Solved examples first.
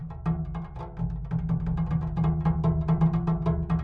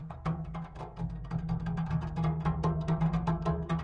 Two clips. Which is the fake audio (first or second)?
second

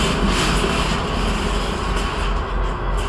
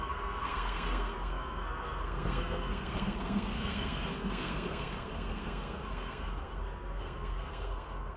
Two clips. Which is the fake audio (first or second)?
second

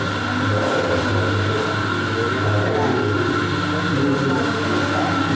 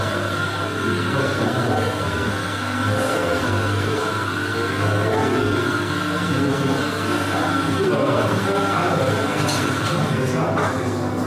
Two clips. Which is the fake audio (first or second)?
second